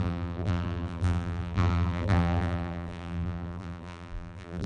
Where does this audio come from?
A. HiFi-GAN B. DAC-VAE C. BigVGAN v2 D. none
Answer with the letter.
C